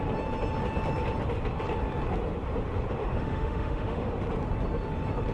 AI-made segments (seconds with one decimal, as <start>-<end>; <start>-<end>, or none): 3.0-4.1